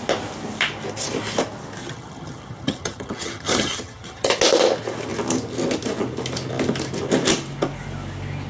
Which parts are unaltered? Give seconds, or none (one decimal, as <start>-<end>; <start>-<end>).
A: 0.0-1.8; 4.3-8.5